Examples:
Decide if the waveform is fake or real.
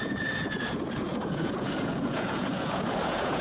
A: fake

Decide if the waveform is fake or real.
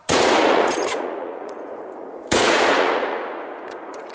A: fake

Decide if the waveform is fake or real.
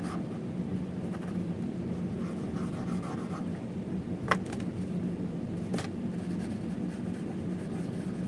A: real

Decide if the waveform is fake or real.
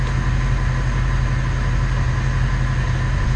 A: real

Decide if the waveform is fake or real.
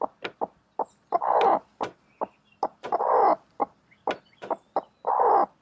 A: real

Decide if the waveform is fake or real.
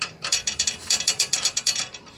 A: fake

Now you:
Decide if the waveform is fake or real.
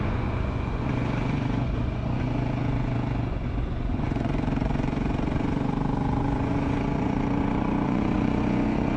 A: fake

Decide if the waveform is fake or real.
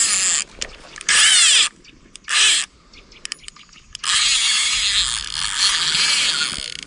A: real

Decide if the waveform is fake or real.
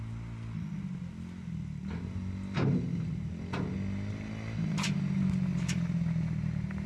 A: real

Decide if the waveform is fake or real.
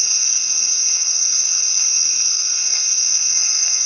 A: fake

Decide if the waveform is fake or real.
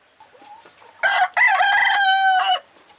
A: real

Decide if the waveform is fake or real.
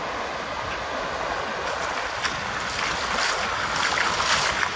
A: real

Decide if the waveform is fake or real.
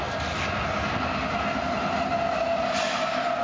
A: real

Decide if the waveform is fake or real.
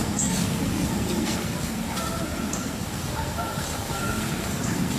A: fake